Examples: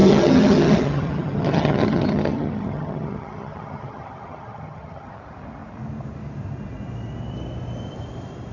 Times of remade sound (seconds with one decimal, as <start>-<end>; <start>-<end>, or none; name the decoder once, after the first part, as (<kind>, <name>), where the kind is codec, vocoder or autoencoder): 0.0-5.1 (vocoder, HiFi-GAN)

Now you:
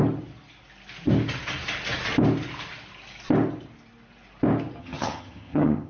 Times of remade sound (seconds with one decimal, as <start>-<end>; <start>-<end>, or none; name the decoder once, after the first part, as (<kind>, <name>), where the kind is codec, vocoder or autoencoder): 4.8-5.9 (vocoder, HiFi-GAN)

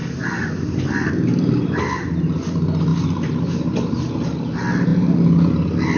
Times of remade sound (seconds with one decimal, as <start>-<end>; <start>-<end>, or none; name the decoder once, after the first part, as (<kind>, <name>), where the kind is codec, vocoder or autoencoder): none